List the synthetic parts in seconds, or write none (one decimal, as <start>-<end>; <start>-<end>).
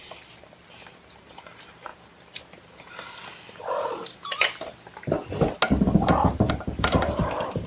0.0-1.9; 6.5-7.7